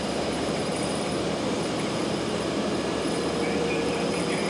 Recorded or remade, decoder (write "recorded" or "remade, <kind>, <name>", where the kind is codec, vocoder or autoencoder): remade, vocoder, BigVGAN v2